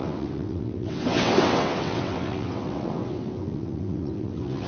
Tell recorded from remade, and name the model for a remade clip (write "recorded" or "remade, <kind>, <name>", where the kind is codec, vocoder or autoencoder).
remade, vocoder, WaveNeXt